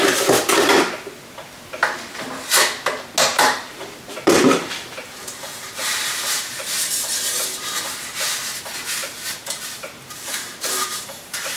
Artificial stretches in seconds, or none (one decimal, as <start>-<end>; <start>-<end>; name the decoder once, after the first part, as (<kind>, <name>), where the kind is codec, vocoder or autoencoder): 3.3-6.9 (vocoder, BigVGAN v2); 9.0-11.6